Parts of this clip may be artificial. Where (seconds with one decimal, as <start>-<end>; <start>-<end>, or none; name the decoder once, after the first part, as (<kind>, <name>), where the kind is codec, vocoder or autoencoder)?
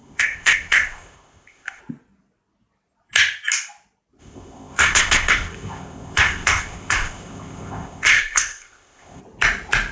0.0-1.8 (codec, ZipCodec); 4.2-9.2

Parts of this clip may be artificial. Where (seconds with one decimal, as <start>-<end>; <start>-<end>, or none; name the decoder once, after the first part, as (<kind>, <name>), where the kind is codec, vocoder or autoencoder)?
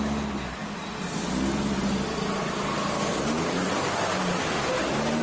none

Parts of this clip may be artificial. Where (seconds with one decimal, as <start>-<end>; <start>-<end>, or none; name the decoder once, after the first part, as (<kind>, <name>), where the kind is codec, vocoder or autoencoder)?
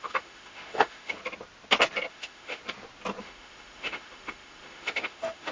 0.0-1.2 (autoencoder, DAC-VAE); 2.1-2.6; 3.2-5.5